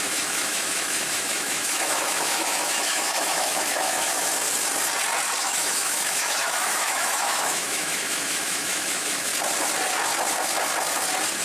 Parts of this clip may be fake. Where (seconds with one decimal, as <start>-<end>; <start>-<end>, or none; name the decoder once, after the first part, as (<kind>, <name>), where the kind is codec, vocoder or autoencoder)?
0.0-4.3 (autoencoder, DAC-VAE); 5.4-9.3

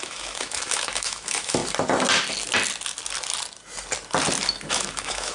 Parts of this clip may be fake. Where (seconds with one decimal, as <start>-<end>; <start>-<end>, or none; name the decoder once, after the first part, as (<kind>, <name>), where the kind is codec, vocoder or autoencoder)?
0.0-1.6 (autoencoder, DAC-VAE); 4.7-5.3